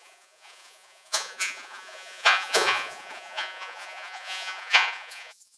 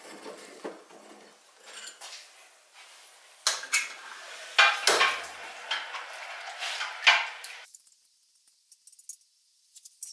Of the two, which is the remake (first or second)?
first